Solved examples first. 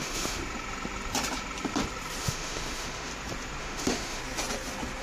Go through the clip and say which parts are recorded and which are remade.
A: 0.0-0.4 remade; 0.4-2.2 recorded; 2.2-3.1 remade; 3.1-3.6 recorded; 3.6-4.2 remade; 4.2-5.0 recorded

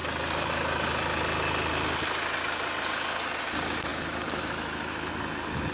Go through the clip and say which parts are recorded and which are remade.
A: 0.0-3.9 recorded; 3.9-5.1 remade; 5.1-5.7 recorded

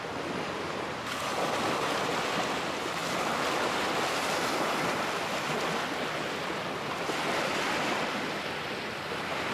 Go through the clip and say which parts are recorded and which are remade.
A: 0.0-1.3 recorded; 1.3-2.3 remade; 2.3-9.5 recorded

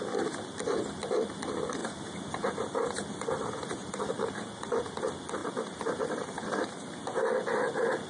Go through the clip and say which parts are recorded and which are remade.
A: 0.0-1.8 recorded; 1.8-4.1 remade; 4.1-5.4 recorded; 5.4-7.0 remade; 7.0-8.1 recorded